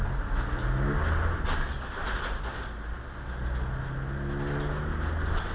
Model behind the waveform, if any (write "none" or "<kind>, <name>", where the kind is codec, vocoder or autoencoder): none